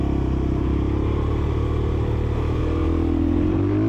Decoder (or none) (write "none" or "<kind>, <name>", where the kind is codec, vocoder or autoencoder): none